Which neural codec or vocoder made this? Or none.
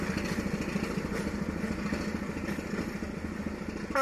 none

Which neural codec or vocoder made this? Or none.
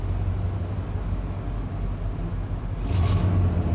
none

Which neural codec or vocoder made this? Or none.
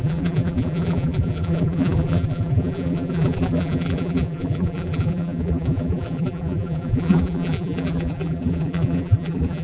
vocoder, BigVGAN v2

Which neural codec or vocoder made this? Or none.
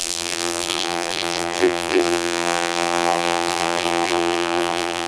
vocoder, BigVGAN v2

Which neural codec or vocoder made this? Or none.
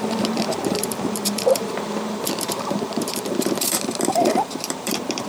vocoder, BigVGAN v2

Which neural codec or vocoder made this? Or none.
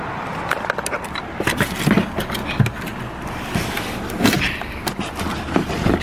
none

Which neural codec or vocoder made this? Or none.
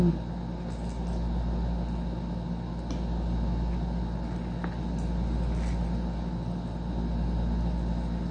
none